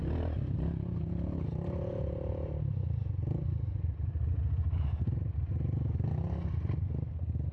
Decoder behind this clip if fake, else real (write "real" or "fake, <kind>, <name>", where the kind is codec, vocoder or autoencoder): real